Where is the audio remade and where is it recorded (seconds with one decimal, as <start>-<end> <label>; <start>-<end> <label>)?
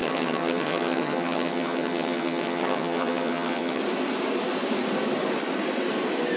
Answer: 0.0-3.8 remade; 3.8-6.4 recorded